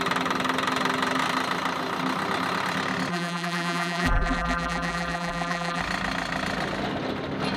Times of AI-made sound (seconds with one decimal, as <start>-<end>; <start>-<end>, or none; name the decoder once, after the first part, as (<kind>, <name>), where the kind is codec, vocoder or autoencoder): 3.1-5.8 (vocoder, BigVGAN v2)